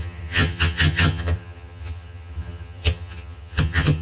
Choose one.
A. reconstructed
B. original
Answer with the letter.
A